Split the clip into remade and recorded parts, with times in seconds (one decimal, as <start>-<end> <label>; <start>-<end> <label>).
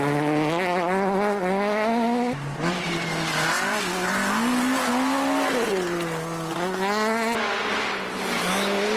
0.0-9.0 recorded